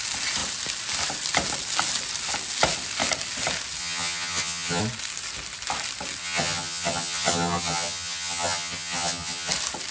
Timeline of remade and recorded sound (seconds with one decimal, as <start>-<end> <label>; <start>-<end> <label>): 0.0-3.8 recorded; 3.8-4.8 remade; 4.8-6.2 recorded; 6.2-9.5 remade; 9.5-9.9 recorded